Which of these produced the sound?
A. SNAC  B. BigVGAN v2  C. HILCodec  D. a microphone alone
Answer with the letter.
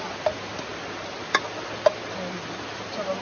D